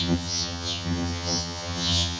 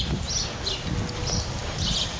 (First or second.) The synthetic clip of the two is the first